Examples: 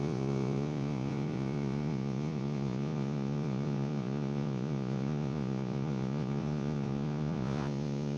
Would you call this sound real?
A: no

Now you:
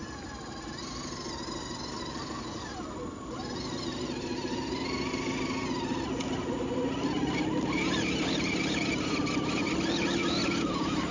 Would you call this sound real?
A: yes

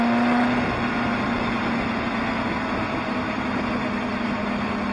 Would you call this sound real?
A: yes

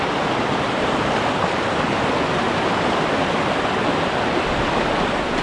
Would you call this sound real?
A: yes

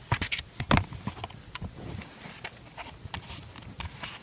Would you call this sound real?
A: yes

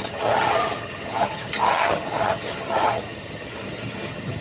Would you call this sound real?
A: no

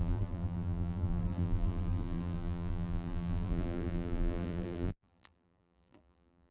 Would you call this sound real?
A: no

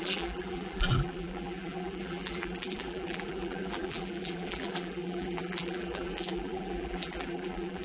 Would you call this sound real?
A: no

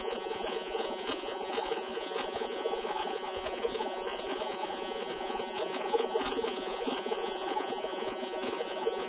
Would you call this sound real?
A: no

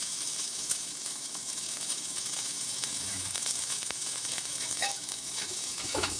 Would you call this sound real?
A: no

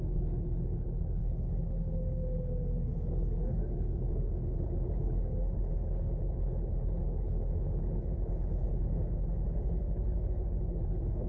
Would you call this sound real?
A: no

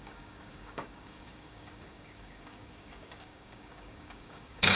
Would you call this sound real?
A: no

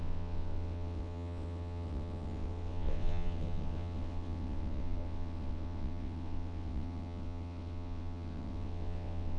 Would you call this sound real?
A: no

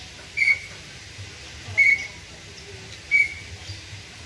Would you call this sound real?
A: yes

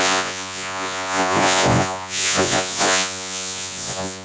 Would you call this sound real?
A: no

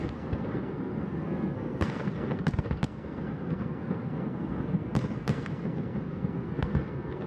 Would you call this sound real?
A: no